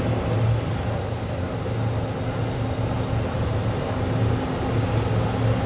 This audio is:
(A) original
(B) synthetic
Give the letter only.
A